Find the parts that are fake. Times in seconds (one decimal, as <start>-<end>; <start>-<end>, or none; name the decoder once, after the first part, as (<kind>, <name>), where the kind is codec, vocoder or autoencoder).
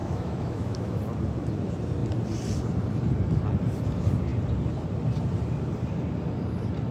0.0-1.0 (autoencoder, DAC-VAE)